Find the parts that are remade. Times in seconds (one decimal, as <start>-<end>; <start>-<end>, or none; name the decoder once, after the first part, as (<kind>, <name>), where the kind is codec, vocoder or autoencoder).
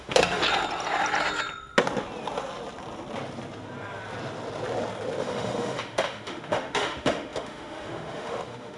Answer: 0.0-0.4 (autoencoder, DAC-VAE); 5.2-8.8